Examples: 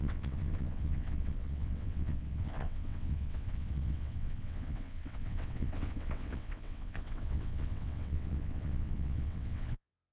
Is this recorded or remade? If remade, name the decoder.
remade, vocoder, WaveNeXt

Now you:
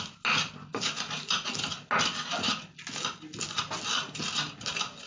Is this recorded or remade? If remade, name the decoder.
recorded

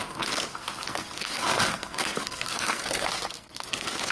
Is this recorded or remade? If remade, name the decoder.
remade, codec, SNAC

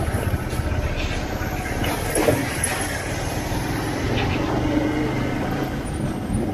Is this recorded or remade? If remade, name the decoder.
recorded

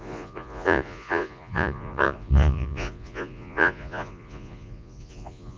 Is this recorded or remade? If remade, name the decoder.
remade, vocoder, Vocos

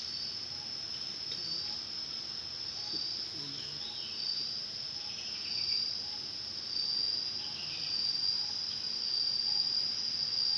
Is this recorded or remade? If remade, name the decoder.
recorded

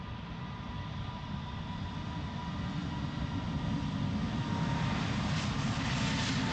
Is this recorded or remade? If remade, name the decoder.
recorded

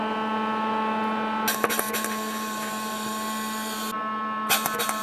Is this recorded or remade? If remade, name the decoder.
recorded